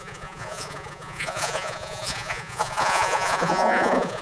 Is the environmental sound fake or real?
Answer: fake